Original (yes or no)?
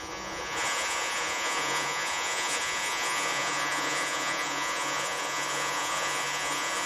no